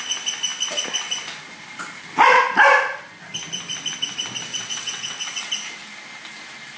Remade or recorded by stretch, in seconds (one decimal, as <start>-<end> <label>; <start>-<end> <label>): 0.0-4.5 recorded; 4.5-5.4 remade; 5.4-6.8 recorded